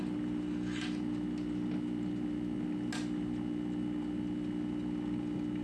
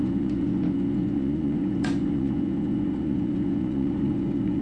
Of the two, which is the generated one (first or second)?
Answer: second